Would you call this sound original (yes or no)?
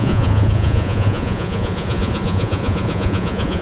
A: no